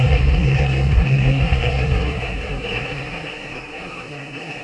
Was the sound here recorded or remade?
remade